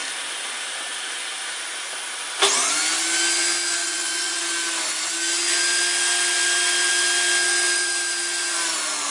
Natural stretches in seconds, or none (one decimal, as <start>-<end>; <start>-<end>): 0.0-3.8; 4.4-9.1